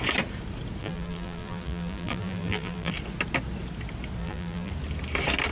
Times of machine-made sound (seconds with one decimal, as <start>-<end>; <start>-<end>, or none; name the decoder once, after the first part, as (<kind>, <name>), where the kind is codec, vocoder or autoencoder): 0.8-2.9 (vocoder, BigVGAN v2); 4.2-4.7